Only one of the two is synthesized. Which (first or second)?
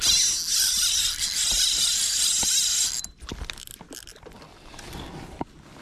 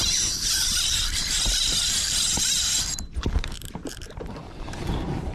second